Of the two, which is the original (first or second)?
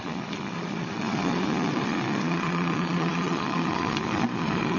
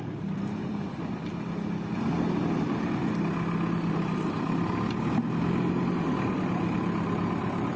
second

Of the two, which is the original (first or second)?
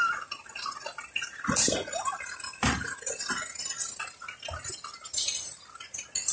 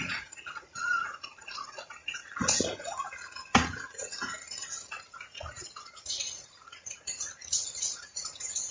first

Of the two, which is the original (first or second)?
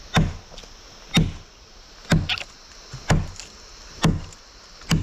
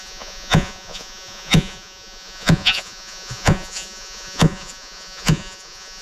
first